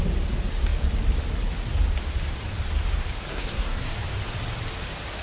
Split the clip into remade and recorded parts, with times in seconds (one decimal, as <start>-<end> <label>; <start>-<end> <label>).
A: 0.0-3.3 recorded; 3.3-3.9 remade; 3.9-5.2 recorded